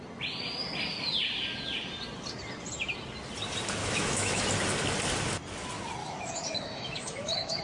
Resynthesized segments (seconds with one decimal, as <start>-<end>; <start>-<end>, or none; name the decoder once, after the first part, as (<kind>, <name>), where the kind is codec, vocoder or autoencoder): 3.8-4.5 (autoencoder, DAC-VAE); 6.0-7.6